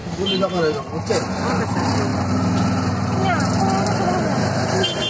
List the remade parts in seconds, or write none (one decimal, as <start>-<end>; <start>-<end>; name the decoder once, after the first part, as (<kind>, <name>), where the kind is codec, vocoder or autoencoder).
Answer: none